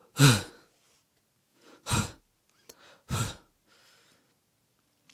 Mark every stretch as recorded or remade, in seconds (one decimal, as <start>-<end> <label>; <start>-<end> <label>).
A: 0.0-0.5 remade; 0.5-1.5 recorded; 1.5-2.2 remade; 2.2-5.1 recorded